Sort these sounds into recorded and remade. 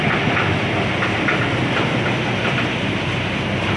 recorded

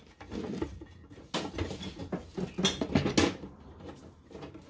recorded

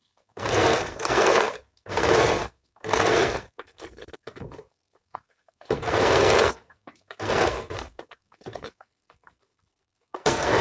remade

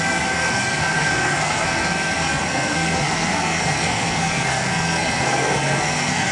remade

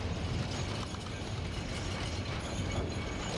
recorded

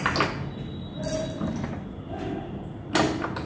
recorded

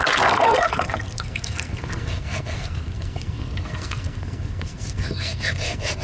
remade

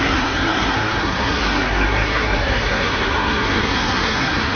remade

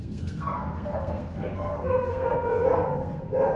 remade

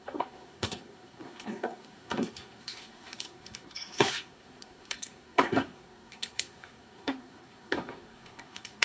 remade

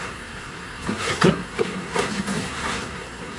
remade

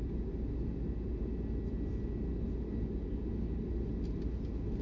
recorded